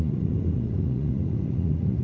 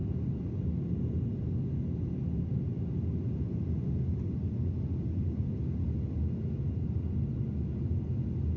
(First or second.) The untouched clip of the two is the second